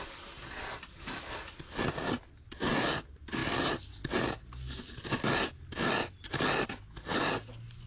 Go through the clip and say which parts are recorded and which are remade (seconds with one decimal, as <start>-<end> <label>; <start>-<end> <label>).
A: 0.0-7.9 recorded